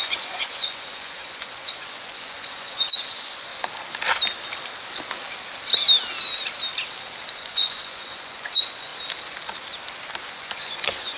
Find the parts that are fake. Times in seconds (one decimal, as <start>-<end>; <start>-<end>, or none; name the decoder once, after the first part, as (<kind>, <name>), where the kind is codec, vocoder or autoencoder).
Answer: 0.0-3.5 (vocoder, Vocos); 7.3-8.9; 10.3-11.2

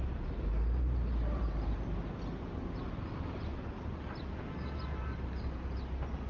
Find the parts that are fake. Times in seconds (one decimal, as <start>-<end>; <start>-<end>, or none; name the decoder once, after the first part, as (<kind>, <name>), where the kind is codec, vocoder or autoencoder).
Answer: none

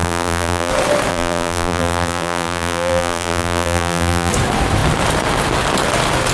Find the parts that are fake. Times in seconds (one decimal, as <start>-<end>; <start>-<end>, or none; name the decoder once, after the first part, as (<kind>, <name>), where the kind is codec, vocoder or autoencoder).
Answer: 0.0-0.7 (vocoder, BigVGAN v2); 1.1-4.3

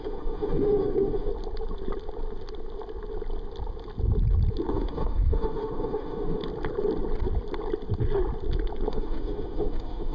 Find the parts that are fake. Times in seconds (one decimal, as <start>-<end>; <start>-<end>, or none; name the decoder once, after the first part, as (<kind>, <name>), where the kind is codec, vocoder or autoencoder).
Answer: 0.0-1.3 (autoencoder, DAC-VAE); 4.7-6.4; 8.9-10.1

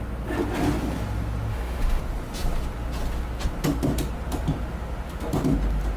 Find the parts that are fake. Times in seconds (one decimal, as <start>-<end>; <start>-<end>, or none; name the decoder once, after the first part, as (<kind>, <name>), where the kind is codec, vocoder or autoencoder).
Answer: 1.5-2.0 (autoencoder, DAC-VAE)